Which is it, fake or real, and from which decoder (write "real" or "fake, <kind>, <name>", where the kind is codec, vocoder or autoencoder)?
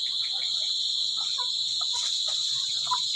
real